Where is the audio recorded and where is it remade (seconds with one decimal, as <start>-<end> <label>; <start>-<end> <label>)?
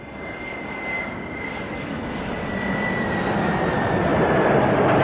0.0-0.9 recorded; 0.9-1.6 remade; 1.6-5.0 recorded